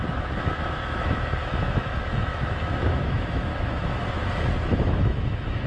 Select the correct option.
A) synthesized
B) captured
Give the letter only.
A